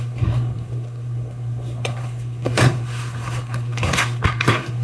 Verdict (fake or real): fake